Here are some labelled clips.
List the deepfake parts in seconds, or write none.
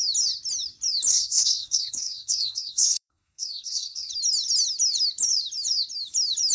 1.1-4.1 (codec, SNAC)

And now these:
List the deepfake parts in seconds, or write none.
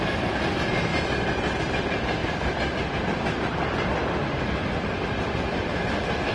2.2-3.0 (vocoder, BigVGAN v2); 3.5-5.2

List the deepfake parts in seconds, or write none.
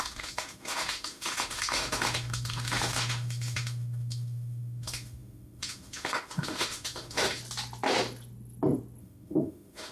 0.0-7.4 (autoencoder, DAC-VAE); 9.0-9.9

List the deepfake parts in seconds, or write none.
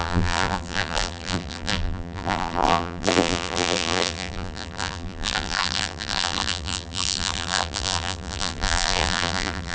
0.0-9.7 (vocoder, BigVGAN v2)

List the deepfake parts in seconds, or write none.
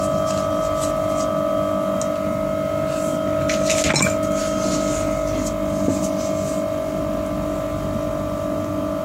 none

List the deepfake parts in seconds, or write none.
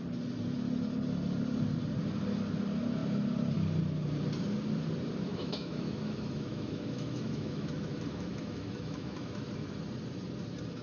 5.3-9.5 (autoencoder, DAC-VAE)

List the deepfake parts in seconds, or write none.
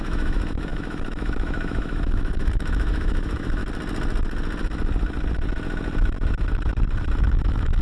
0.0-3.6 (autoencoder, DAC-VAE); 7.2-7.8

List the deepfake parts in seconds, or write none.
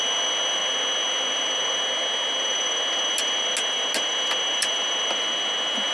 none